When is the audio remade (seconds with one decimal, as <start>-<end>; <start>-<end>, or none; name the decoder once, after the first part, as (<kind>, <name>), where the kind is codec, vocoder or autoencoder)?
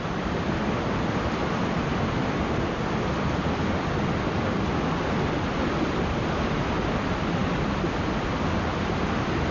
none